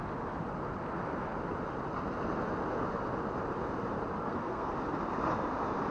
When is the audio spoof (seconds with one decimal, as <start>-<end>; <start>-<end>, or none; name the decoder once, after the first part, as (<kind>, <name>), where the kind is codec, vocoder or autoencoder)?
4.2-4.7 (codec, SNAC)